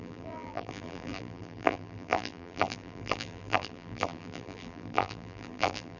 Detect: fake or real fake